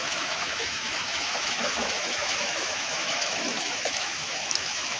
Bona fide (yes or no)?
no